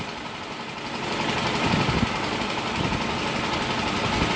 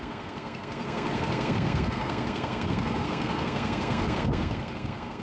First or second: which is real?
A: first